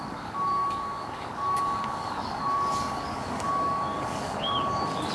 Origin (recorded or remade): remade